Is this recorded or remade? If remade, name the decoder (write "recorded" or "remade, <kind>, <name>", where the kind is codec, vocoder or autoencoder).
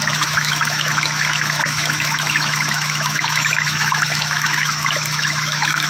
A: remade, autoencoder, DAC-VAE